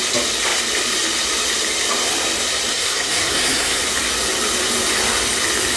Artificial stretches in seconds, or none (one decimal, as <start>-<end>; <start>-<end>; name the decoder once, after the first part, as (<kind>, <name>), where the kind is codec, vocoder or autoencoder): 2.7-3.8 (codec, SNAC)